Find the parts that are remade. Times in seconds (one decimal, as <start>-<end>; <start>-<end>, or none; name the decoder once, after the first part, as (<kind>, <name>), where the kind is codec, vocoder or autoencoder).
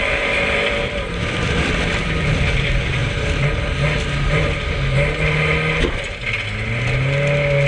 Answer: 0.0-3.0 (vocoder, BigVGAN v2)